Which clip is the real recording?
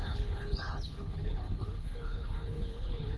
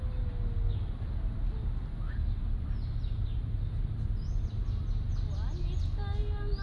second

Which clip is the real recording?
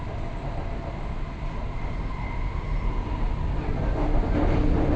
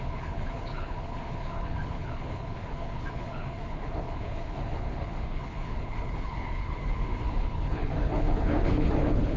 first